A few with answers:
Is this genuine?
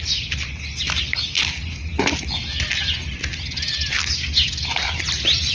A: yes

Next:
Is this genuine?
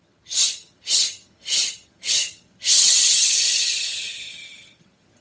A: no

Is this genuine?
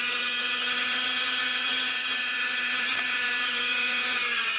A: no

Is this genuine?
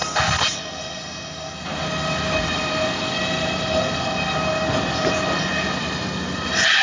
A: yes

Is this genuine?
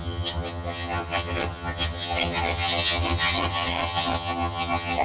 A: no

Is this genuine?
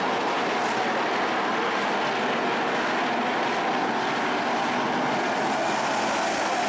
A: yes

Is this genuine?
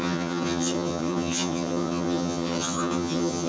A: no